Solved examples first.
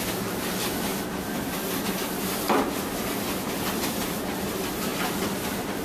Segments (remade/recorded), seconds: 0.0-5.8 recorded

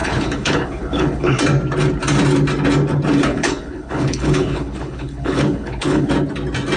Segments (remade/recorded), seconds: 0.0-1.4 remade; 1.4-3.3 recorded; 3.3-6.1 remade; 6.1-6.8 recorded

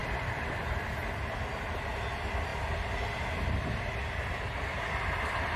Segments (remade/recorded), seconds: 0.0-5.6 recorded

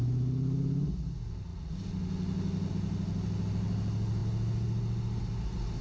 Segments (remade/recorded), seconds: 0.0-5.8 recorded